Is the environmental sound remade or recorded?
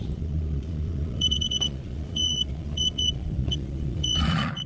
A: remade